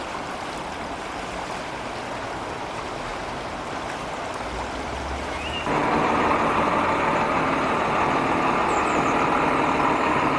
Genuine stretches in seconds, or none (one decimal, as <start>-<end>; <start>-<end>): 0.0-10.4